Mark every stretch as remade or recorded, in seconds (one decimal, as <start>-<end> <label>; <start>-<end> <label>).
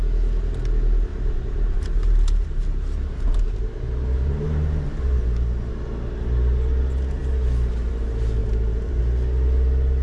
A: 0.0-1.1 recorded; 1.1-5.7 remade; 5.7-8.4 recorded; 8.4-9.0 remade; 9.0-10.0 recorded